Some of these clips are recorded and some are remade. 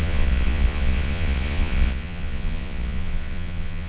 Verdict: remade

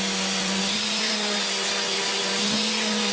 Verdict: recorded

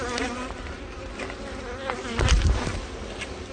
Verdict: recorded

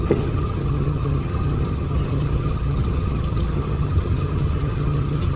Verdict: remade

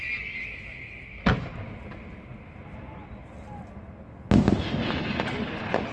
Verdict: recorded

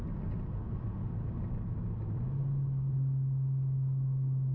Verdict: recorded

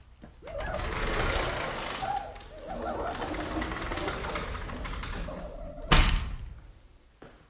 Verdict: recorded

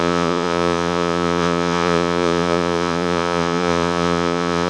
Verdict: remade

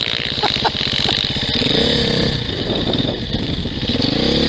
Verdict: recorded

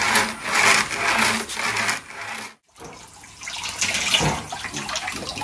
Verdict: recorded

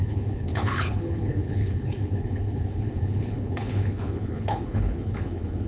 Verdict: remade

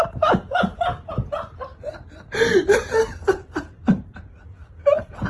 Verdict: recorded